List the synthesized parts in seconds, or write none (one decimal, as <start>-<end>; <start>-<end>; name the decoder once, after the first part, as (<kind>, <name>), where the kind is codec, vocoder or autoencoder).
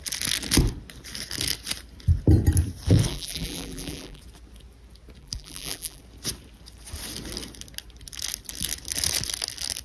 3.1-4.2 (vocoder, BigVGAN v2); 5.2-6.0